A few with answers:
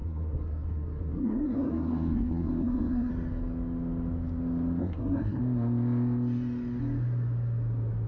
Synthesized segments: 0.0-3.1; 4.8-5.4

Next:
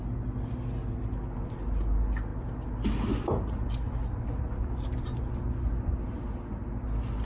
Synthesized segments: none

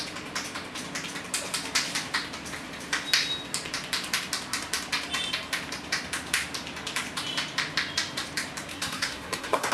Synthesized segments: 8.7-9.7

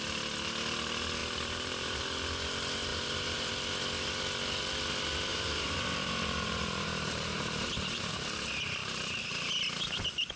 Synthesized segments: 1.2-2.0; 2.9-3.5; 5.3-8.1

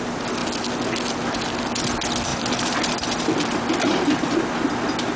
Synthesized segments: 2.3-4.3

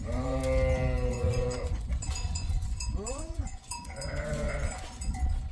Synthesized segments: 0.0-0.4; 1.1-5.5

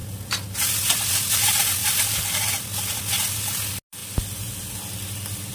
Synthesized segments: 1.8-3.0